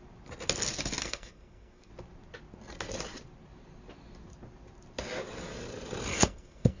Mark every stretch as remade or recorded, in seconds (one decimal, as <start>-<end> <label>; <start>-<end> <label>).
0.0-1.0 recorded; 1.0-1.9 remade; 1.9-6.1 recorded; 6.1-6.8 remade